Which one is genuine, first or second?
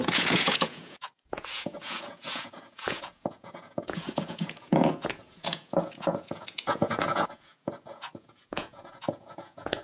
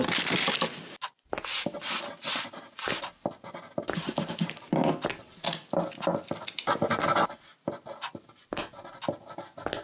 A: second